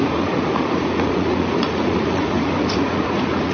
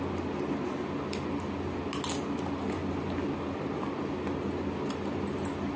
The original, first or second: second